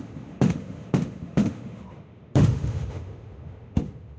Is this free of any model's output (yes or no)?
no